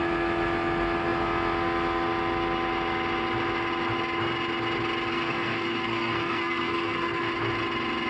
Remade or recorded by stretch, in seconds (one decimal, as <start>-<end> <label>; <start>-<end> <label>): 0.0-5.1 recorded; 5.1-7.3 remade; 7.3-8.1 recorded